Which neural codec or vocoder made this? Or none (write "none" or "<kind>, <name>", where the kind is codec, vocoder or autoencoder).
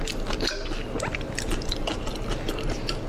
none